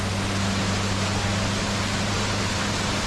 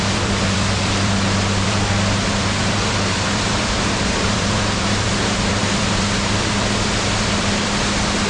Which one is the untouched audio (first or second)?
first